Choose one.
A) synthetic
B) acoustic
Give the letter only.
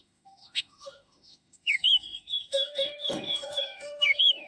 A